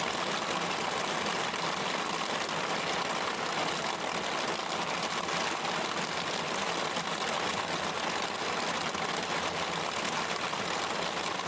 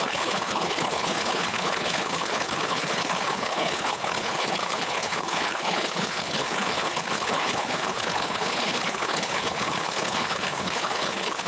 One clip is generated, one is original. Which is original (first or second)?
first